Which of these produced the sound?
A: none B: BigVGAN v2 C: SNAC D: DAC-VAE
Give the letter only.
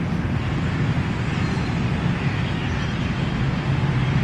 A